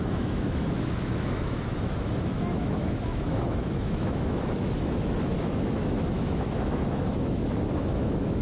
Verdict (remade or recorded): remade